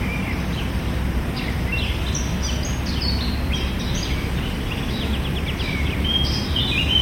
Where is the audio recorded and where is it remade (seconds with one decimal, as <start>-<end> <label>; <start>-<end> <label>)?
0.0-7.0 recorded